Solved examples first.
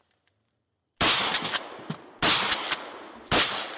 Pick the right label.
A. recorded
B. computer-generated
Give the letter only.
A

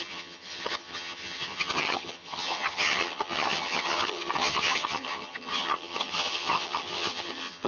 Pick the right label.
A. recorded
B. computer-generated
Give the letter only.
B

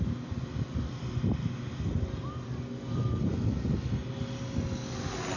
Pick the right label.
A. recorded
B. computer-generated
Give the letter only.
A